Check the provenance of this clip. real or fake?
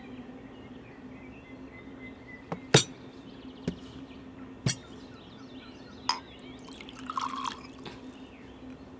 real